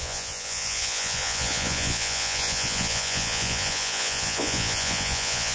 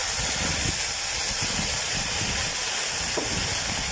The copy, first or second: first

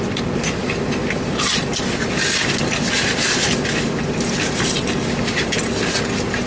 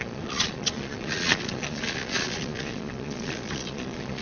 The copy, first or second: second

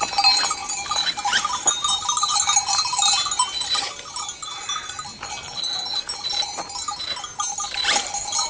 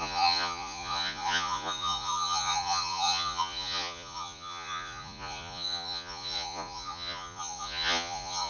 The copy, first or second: second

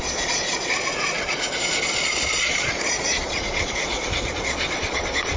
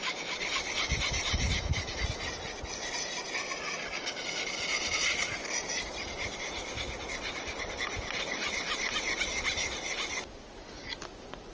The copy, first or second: first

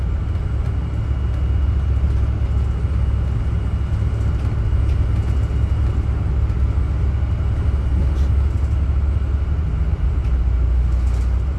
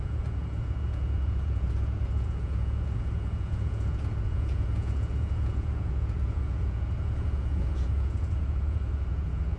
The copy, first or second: second